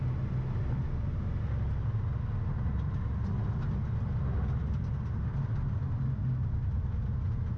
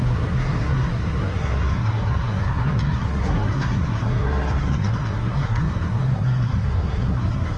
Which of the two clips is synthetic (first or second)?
second